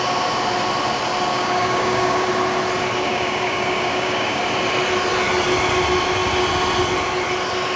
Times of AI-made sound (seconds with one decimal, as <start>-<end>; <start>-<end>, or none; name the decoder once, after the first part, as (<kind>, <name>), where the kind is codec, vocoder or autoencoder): 1.3-2.3 (codec, DAC); 3.1-4.4